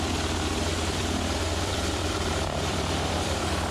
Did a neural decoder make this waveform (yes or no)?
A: yes